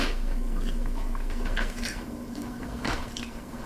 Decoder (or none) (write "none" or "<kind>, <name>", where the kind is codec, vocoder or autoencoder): codec, SNAC